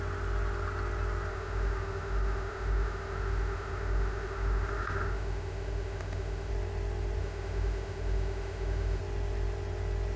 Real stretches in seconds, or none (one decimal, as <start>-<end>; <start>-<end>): 0.0-1.3; 6.5-7.2; 9.0-10.2